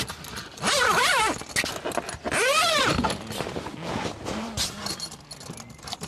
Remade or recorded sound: recorded